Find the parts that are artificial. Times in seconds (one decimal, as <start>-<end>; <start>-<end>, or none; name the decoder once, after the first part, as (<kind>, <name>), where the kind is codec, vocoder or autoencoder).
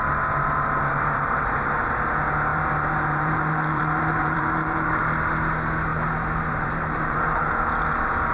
2.5-5.0 (vocoder, BigVGAN v2); 5.9-7.5